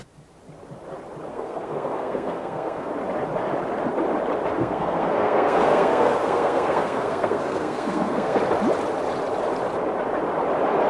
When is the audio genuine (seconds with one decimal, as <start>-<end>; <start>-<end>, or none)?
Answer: 0.0-1.3; 2.9-4.6; 8.4-10.9